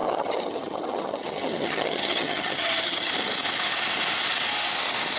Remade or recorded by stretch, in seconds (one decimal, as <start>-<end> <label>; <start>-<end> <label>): 0.0-3.1 remade; 3.1-5.2 recorded

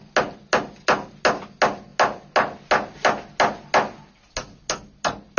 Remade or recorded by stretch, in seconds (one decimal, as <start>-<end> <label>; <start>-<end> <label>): 0.0-5.4 recorded

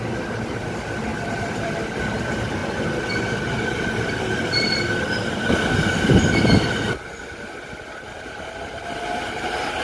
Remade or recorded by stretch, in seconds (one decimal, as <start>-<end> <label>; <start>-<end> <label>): 0.0-2.6 remade; 2.6-4.2 recorded; 4.2-9.8 remade

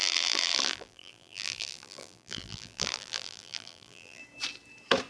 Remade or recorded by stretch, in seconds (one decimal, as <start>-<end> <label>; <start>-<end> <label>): 0.0-4.2 remade; 4.2-5.1 recorded

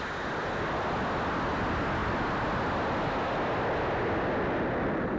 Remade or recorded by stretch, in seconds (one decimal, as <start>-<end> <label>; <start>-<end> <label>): 0.0-5.2 recorded

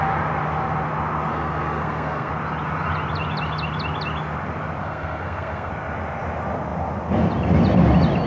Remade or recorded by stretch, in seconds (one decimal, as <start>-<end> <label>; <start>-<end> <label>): 0.0-1.3 recorded; 1.3-2.3 remade; 2.3-4.8 recorded; 4.8-5.7 remade; 5.7-8.3 recorded

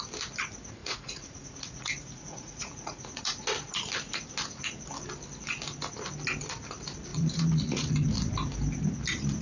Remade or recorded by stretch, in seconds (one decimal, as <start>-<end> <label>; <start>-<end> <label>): 0.0-0.8 recorded; 0.8-3.2 remade; 3.2-7.1 recorded; 7.1-7.9 remade; 7.9-9.4 recorded

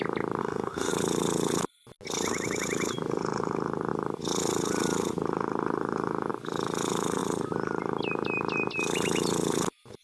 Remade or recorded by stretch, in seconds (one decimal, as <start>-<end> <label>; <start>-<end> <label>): 0.0-0.4 recorded; 0.4-0.9 remade; 0.9-10.0 recorded